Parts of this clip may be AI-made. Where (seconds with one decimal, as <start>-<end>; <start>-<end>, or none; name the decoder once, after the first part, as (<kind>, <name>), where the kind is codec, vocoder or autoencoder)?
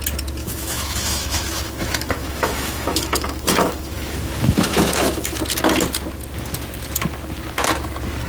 0.4-5.4 (autoencoder, DAC-VAE)